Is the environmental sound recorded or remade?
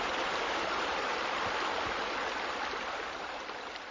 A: remade